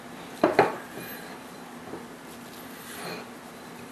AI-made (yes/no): no